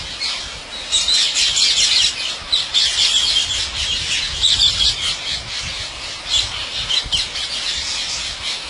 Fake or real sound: real